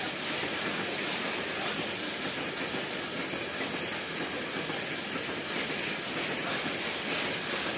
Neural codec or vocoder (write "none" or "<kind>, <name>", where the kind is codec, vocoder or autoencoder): none